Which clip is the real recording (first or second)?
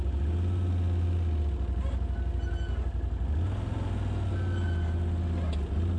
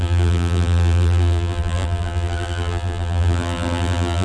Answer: first